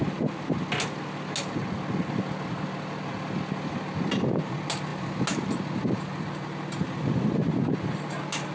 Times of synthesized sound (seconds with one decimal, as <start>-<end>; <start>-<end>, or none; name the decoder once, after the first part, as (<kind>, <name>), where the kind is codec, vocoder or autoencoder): none